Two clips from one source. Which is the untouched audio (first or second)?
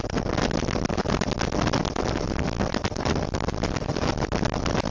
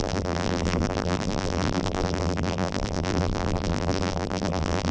first